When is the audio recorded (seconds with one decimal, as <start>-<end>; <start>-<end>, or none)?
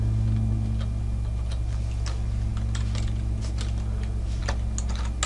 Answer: 0.0-5.3